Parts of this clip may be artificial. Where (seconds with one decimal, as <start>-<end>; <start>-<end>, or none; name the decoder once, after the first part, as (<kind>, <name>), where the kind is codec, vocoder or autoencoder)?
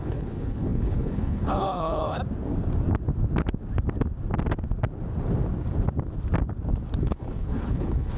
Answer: 0.0-2.2 (codec, HILCodec); 7.0-8.2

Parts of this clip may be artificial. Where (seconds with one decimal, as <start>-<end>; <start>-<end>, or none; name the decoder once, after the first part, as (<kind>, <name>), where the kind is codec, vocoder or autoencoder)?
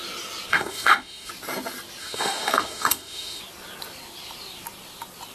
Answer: 0.5-1.3 (autoencoder, DAC-VAE); 2.0-3.4